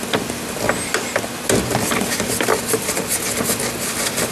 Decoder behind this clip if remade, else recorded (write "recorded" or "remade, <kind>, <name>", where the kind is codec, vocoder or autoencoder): recorded